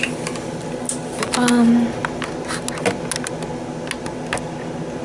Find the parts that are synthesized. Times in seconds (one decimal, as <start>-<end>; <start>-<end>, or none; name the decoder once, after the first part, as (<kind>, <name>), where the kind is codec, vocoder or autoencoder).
none